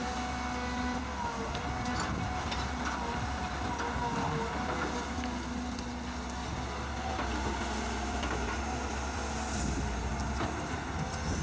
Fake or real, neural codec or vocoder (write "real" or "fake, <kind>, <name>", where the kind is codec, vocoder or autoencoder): real